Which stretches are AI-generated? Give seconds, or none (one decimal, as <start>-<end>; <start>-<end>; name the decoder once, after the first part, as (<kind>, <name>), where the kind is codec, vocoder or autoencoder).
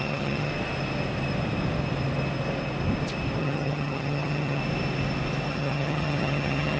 0.0-0.5 (vocoder, HiFi-GAN); 3.4-4.6; 5.5-6.8